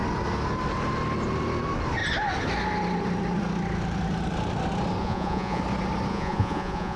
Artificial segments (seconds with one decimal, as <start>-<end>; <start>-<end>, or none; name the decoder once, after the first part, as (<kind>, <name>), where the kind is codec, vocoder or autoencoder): 5.0-5.6 (vocoder, Vocos); 6.1-7.0